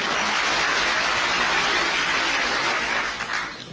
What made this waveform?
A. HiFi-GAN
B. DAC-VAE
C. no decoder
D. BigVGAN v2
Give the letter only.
C